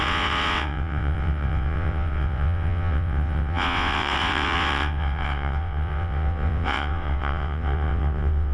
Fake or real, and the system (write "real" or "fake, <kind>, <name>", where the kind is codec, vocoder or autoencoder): fake, vocoder, WaveNeXt